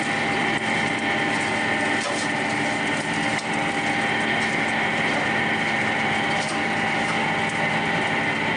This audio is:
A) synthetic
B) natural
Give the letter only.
B